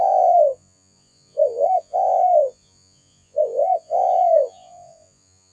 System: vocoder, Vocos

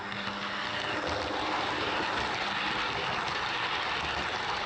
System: none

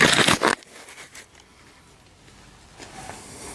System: none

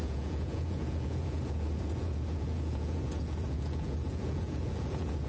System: vocoder, Vocos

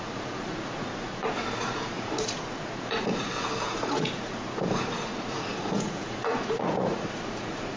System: vocoder, Vocos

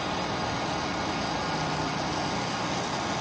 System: none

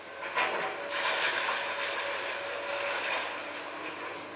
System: none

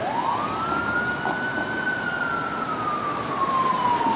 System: none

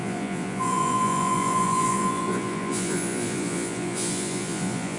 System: vocoder, Vocos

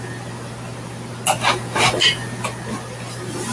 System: none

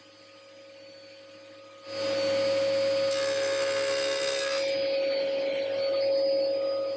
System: none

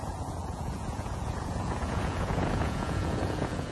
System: vocoder, Vocos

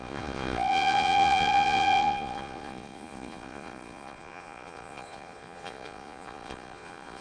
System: vocoder, Vocos